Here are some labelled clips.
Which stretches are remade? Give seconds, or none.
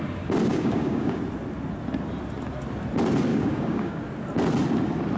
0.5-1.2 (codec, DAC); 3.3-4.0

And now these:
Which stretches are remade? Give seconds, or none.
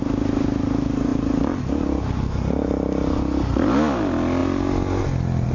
none